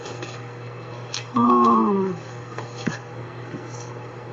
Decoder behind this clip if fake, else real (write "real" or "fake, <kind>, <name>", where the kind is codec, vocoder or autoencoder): fake, codec, SNAC